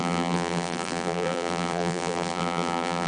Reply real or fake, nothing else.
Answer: fake